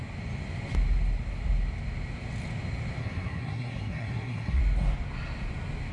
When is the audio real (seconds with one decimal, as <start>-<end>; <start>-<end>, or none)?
0.0-3.0; 4.6-5.9